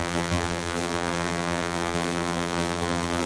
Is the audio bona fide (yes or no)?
no